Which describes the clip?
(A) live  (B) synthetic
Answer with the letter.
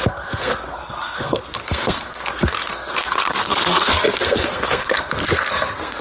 B